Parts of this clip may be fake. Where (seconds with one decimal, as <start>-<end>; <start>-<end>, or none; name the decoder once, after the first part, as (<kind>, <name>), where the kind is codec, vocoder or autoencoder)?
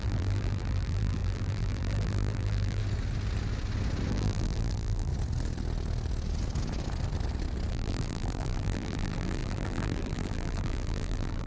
0.0-2.8 (vocoder, BigVGAN v2); 4.1-5.1; 7.7-11.5